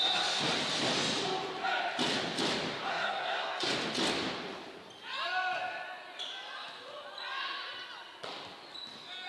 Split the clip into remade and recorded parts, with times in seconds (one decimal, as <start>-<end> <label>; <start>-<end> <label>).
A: 0.0-2.9 recorded; 2.9-3.7 remade; 3.7-9.3 recorded